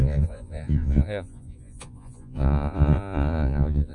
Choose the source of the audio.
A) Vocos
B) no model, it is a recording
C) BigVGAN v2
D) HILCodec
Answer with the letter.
A